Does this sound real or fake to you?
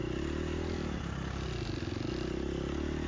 real